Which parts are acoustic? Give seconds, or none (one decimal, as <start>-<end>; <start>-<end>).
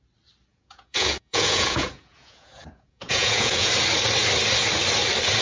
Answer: 0.0-0.5; 3.7-5.4